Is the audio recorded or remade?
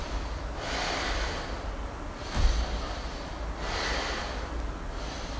recorded